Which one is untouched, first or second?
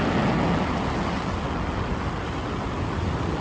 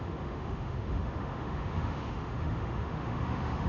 first